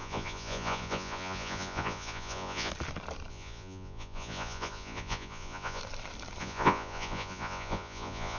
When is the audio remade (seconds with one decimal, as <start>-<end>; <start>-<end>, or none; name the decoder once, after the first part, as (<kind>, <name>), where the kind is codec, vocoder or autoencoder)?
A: 0.0-2.7 (vocoder, Vocos); 3.3-5.8; 6.4-8.4